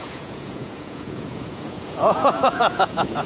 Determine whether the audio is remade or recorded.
remade